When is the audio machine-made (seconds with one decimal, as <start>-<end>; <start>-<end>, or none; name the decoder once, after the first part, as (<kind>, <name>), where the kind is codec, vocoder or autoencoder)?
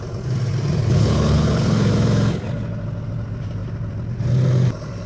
0.8-1.9 (codec, HILCodec)